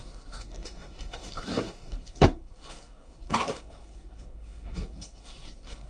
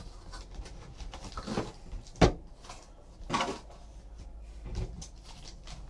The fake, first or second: first